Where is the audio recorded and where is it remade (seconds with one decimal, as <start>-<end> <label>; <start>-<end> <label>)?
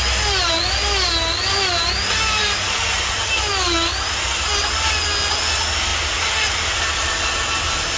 0.0-8.0 recorded